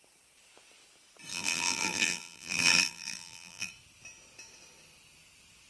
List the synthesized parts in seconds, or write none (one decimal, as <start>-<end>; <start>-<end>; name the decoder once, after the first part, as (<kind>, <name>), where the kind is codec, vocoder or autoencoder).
1.3-3.7 (vocoder, BigVGAN v2)